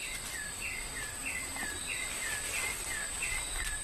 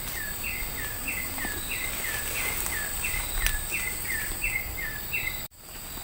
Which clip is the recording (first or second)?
first